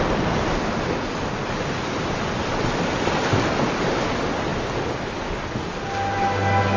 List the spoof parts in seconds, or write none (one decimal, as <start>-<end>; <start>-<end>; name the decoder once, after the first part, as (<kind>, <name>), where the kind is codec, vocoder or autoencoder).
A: none